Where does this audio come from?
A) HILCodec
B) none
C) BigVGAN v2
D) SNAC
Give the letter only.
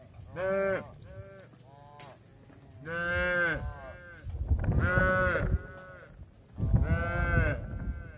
B